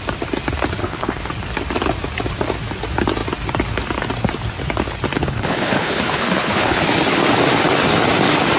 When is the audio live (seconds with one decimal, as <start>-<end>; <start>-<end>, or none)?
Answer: 0.0-0.8; 1.3-5.2; 6.8-8.6